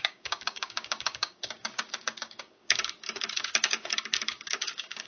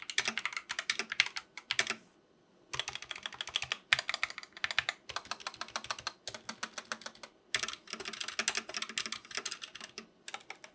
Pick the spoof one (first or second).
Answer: first